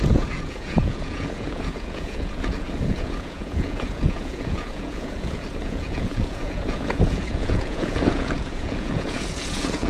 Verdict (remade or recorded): remade